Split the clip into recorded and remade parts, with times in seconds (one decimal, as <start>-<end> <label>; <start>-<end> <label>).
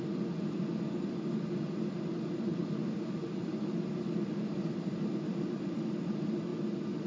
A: 0.0-7.1 recorded